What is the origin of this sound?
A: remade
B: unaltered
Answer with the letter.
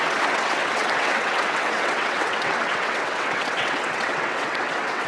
A